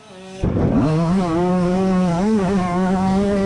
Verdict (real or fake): fake